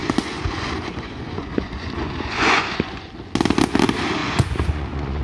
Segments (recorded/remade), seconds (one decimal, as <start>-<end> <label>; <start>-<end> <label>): 0.0-3.1 remade; 3.1-4.2 recorded; 4.2-5.2 remade